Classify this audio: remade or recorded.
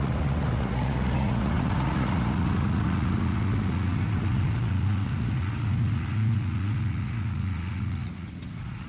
remade